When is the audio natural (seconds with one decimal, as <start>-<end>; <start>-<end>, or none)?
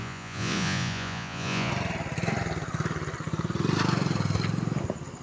1.7-5.2